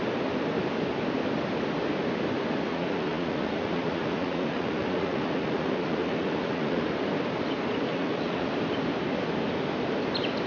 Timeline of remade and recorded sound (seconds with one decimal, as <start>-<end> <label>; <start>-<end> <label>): 0.0-2.7 recorded; 2.7-6.9 remade; 6.9-7.9 recorded; 7.9-8.5 remade; 8.5-10.5 recorded